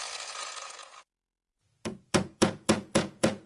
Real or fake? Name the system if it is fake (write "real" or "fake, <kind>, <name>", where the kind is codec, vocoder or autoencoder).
fake, vocoder, Vocos